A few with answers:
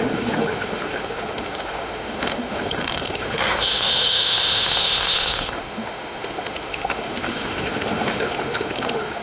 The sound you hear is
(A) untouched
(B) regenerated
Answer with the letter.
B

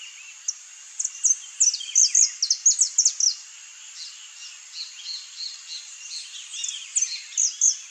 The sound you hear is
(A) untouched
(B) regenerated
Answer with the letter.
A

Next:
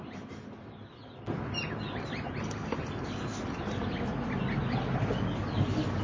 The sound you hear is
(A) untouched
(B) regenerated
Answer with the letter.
A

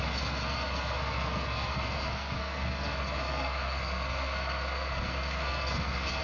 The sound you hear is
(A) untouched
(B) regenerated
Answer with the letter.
B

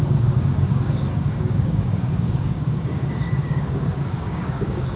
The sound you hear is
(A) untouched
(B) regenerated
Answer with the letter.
B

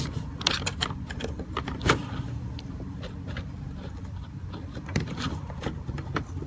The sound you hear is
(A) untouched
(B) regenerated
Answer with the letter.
B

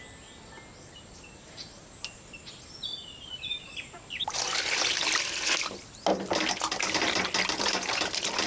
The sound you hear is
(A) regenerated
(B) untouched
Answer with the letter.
B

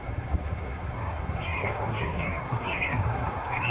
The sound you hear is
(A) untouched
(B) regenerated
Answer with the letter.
B